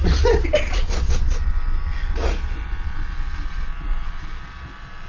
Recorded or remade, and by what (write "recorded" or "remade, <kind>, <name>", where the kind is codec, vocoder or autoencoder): remade, vocoder, Vocos